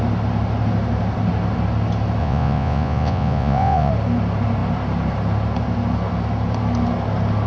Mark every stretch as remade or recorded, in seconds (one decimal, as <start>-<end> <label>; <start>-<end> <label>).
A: 0.0-2.2 recorded; 2.2-3.9 remade; 3.9-7.5 recorded